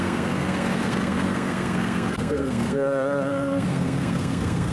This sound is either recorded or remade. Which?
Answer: remade